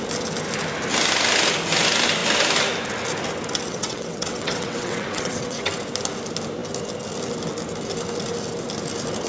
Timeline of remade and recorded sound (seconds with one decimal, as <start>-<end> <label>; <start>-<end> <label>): 0.0-3.7 recorded; 3.7-5.7 remade; 5.7-9.3 recorded